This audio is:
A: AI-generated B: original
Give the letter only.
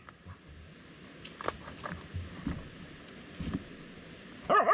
B